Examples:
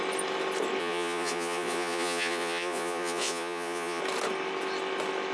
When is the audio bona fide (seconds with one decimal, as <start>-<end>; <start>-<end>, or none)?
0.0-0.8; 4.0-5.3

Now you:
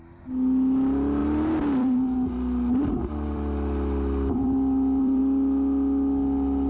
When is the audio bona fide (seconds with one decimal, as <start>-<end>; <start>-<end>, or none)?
0.0-1.2; 5.2-6.7

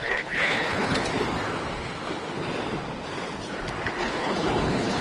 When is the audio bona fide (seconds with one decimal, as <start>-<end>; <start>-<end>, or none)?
1.0-4.0

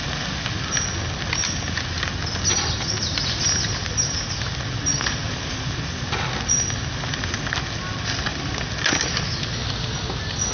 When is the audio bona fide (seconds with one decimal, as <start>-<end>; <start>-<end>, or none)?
0.0-10.5